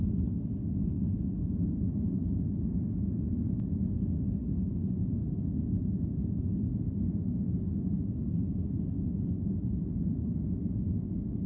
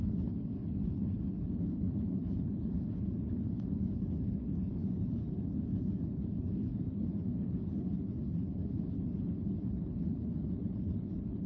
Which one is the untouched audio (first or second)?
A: first